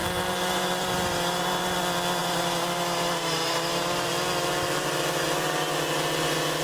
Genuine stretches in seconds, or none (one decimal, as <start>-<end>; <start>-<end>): 1.8-2.2; 4.1-6.6